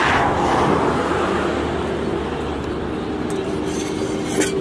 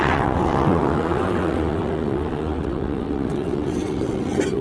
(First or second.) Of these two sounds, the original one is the first